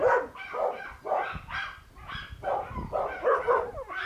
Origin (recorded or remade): recorded